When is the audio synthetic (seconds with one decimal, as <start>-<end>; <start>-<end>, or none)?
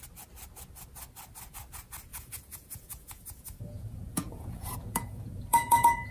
2.1-6.1